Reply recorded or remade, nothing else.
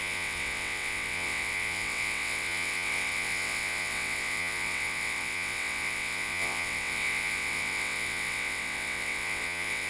remade